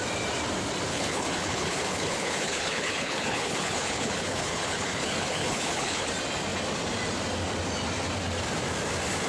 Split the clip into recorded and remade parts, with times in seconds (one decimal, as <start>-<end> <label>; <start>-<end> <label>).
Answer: 0.0-0.9 recorded; 0.9-6.1 remade; 6.1-9.3 recorded